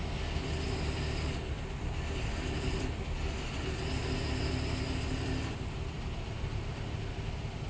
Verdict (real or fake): real